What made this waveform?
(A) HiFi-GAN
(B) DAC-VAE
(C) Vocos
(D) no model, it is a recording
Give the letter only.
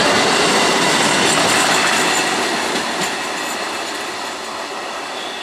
D